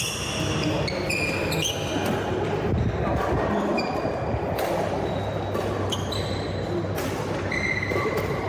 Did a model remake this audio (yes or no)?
no